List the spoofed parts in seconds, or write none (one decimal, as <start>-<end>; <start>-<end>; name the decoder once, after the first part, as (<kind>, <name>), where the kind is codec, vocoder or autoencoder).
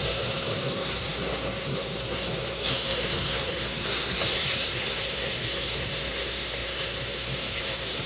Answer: 0.0-8.1 (codec, SNAC)